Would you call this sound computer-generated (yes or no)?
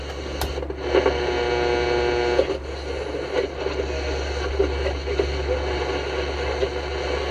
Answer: no